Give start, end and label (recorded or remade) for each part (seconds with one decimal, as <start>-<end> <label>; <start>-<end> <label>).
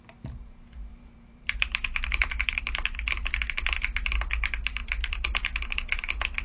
0.0-0.9 recorded; 0.9-2.6 remade; 2.6-4.6 recorded; 4.6-5.6 remade; 5.6-6.4 recorded